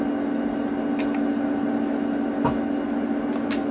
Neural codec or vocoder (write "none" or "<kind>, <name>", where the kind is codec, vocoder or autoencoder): none